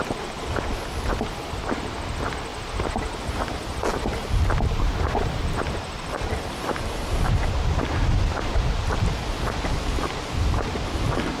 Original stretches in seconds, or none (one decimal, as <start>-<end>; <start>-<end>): 0.0-2.5; 3.5-4.1; 7.8-11.4